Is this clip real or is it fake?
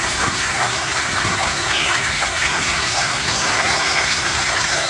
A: fake